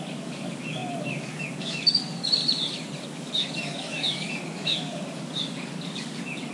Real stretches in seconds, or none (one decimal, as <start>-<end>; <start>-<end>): 2.4-3.0